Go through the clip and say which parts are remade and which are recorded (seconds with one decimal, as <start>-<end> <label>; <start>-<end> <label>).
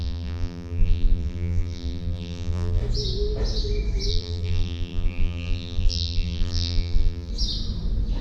0.0-2.8 remade; 2.8-4.1 recorded; 4.1-7.3 remade; 7.3-8.2 recorded